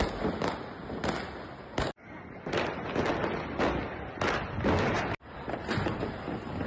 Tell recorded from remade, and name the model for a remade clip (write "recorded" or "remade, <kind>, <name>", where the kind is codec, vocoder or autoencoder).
recorded